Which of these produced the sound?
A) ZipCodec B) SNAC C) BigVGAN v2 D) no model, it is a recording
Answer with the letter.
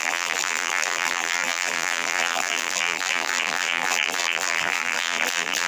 C